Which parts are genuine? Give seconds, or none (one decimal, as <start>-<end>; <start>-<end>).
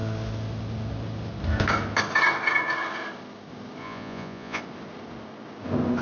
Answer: 0.0-3.8; 4.6-6.0